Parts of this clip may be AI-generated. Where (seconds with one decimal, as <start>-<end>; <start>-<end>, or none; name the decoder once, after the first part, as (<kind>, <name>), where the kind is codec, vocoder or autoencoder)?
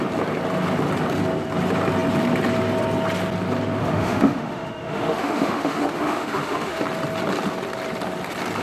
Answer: 3.8-6.8 (autoencoder, DAC-VAE)